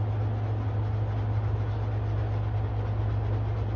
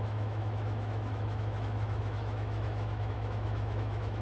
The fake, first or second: second